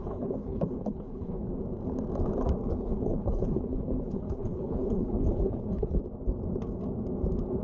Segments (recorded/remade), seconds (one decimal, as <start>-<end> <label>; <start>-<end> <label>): 0.0-1.5 remade; 1.5-2.7 recorded; 2.7-6.0 remade; 6.0-7.6 recorded